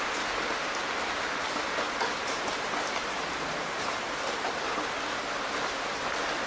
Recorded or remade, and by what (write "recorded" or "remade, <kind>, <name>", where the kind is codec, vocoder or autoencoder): recorded